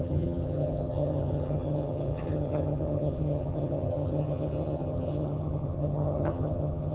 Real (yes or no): no